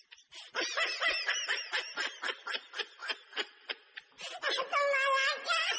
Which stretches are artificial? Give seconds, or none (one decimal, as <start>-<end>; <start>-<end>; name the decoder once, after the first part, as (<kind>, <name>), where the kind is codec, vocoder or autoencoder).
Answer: none